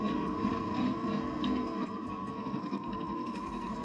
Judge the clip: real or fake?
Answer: fake